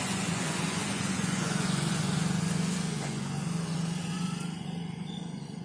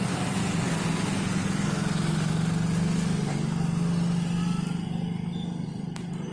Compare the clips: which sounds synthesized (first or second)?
first